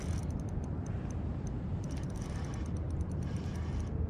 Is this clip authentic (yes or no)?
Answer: yes